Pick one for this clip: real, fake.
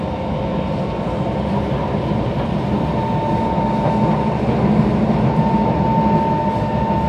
real